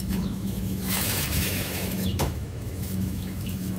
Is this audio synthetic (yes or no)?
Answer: yes